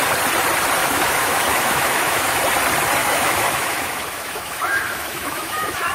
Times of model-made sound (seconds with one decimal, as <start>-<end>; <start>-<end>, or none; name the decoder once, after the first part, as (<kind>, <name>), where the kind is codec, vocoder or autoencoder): 0.8-2.4 (autoencoder, DAC-VAE); 3.0-5.9